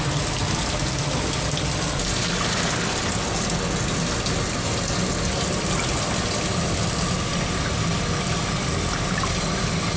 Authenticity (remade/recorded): recorded